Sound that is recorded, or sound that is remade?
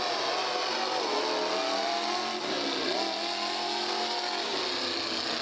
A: recorded